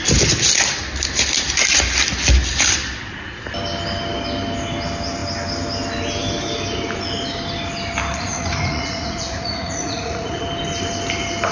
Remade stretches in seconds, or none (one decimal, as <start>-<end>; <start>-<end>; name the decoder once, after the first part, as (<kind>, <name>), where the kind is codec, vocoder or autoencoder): 8.1-10.4 (vocoder, Vocos)